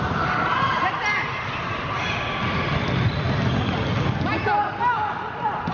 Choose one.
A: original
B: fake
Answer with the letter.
A